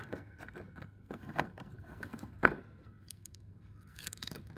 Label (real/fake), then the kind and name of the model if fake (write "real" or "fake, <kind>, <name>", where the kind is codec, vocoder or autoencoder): fake, codec, SNAC